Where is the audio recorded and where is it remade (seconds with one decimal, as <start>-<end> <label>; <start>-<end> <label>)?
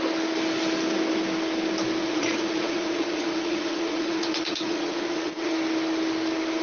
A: 0.0-2.0 recorded; 2.0-5.5 remade; 5.5-6.6 recorded